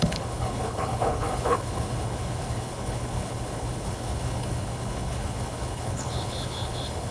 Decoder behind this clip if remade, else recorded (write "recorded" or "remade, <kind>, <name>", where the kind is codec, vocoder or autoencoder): remade, codec, HILCodec